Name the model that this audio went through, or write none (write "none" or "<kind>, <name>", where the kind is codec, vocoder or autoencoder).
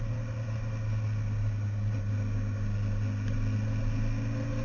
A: none